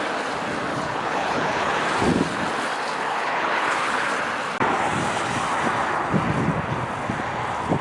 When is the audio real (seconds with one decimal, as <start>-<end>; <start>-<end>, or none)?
0.0-0.7; 1.8-3.1; 4.1-7.8